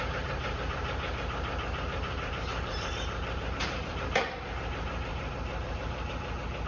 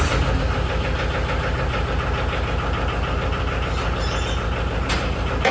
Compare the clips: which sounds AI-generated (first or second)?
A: first